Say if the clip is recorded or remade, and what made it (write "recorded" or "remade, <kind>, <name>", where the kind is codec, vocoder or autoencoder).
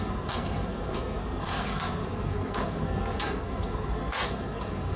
remade, codec, SNAC